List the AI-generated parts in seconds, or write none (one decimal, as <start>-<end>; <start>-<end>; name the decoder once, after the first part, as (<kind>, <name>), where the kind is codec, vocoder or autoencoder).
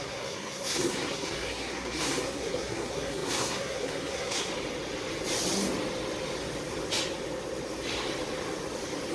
0.0-4.5 (codec, SNAC)